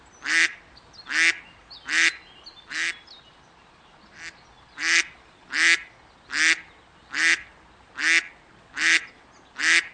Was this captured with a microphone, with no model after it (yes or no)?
yes